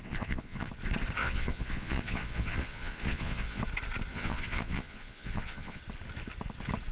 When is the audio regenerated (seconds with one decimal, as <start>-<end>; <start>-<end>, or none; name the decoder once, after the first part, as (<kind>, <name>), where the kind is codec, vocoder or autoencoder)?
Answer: 0.0-0.7 (vocoder, Vocos); 1.2-3.6; 4.1-5.8

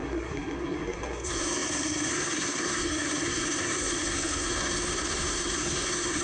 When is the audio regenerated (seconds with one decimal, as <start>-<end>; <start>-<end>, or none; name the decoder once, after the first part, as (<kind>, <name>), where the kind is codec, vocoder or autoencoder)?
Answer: 0.0-6.2 (codec, SNAC)